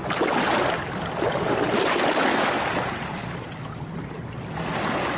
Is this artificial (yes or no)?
no